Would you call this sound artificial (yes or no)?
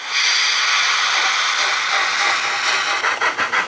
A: no